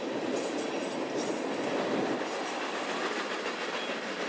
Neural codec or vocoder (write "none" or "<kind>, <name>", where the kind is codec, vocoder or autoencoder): none